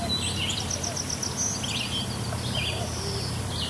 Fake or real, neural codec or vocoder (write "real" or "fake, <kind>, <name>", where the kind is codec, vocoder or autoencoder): real